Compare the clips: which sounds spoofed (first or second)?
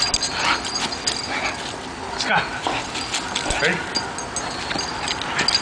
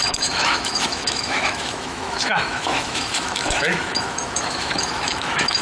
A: second